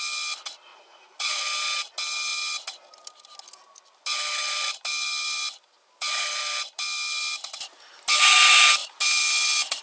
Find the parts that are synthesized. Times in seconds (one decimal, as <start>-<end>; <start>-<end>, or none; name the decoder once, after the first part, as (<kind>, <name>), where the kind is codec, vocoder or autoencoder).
0.7-1.4 (vocoder, Vocos)